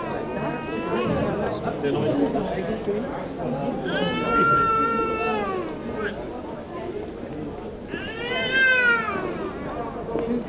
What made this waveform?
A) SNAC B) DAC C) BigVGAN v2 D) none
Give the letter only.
D